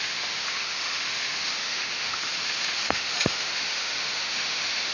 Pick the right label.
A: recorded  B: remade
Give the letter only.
B